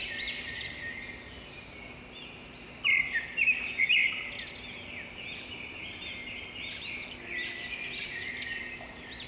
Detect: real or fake real